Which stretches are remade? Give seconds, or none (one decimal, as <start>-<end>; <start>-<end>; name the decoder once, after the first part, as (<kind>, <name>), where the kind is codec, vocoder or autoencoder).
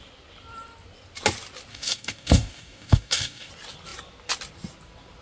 1.7-3.5 (codec, DAC)